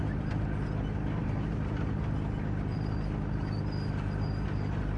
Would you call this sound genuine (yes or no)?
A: yes